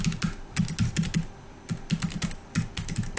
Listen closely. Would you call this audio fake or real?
real